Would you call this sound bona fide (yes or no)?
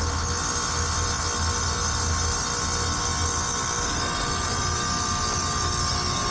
yes